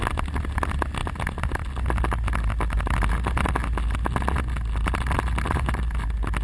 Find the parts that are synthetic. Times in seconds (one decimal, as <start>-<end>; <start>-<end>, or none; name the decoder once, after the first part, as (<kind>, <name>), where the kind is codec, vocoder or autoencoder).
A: none